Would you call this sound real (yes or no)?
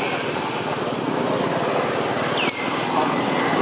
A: yes